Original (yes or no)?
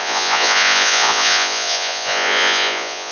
no